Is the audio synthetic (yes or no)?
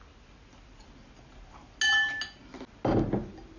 no